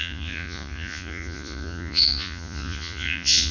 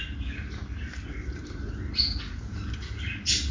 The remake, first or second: first